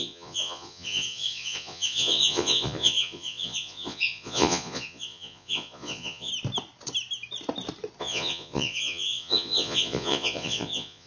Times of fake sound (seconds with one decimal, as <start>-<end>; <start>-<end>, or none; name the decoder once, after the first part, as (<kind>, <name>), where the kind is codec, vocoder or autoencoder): 0.0-6.3 (vocoder, Vocos); 8.0-11.1